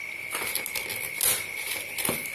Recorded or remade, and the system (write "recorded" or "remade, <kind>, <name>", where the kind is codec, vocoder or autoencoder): recorded